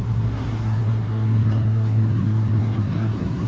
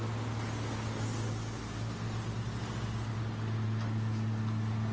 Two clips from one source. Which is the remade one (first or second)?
first